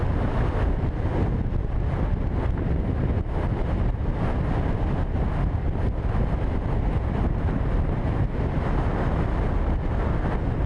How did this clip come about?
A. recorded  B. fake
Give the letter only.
A